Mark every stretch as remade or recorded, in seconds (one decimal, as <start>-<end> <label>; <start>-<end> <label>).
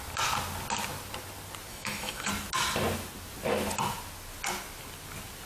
0.0-1.7 recorded; 1.7-2.3 remade; 2.3-5.5 recorded